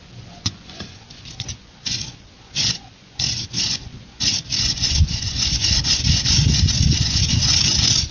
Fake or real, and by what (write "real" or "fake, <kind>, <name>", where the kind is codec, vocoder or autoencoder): fake, vocoder, Vocos